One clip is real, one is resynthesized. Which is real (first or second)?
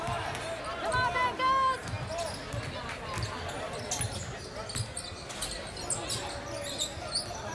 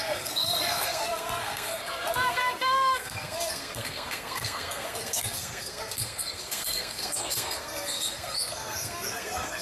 first